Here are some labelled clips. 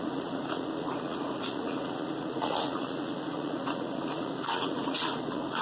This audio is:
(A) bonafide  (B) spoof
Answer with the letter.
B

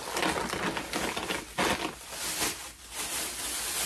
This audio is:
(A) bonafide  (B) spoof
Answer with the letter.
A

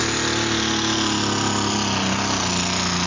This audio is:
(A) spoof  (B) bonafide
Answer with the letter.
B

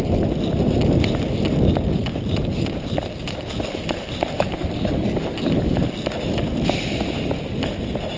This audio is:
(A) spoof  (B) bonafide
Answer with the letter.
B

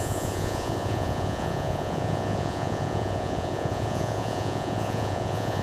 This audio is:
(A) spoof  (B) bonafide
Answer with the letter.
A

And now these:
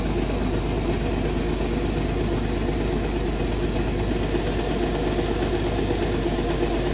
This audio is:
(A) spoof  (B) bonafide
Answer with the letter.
B